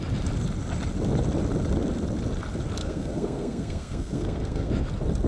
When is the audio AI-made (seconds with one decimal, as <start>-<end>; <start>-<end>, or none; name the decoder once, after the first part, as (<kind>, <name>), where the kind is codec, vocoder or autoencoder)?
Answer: 2.8-4.7 (codec, SNAC)